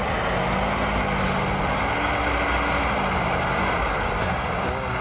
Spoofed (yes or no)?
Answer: no